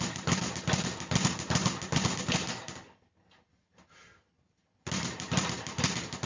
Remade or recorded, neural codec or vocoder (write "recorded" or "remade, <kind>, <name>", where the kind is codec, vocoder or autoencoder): recorded